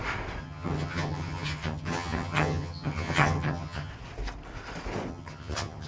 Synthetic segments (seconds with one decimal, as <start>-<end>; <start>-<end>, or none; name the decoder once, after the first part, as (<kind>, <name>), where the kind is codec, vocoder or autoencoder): 0.4-3.9 (vocoder, HiFi-GAN); 5.1-5.9